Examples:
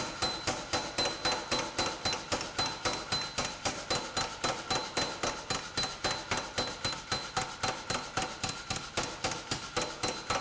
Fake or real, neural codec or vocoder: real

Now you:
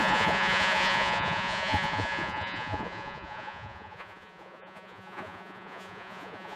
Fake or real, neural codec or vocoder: fake, vocoder, Vocos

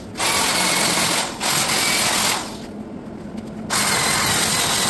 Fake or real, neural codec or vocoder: real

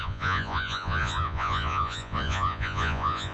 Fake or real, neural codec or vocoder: fake, vocoder, Vocos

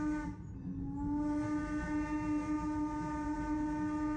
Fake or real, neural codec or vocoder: real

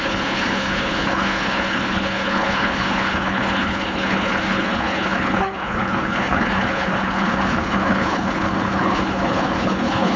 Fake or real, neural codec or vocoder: fake, codec, HILCodec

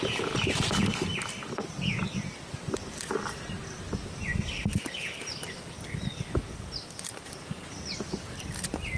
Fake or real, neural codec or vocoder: real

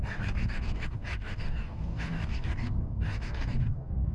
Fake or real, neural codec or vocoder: fake, codec, DAC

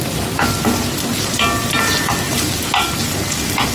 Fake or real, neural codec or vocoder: real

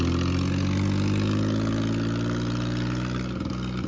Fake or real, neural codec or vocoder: real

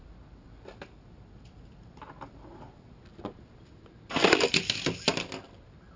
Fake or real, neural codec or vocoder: real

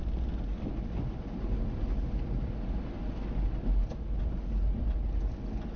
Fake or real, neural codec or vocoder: real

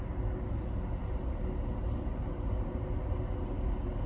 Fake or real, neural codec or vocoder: real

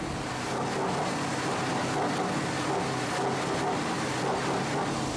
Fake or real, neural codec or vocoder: real